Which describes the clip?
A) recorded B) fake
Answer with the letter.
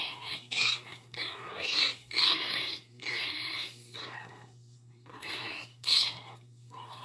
B